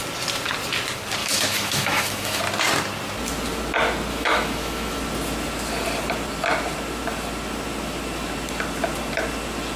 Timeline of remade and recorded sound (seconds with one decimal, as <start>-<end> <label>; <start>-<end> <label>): 0.0-1.2 recorded; 1.2-2.4 remade; 2.4-4.1 recorded; 4.1-5.0 remade; 5.0-9.8 recorded